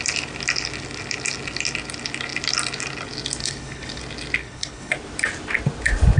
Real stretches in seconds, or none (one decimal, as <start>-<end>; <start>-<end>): 0.0-3.4; 4.0-4.4; 4.9-6.2